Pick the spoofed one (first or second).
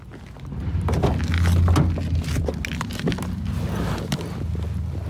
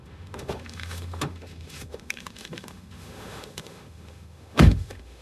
second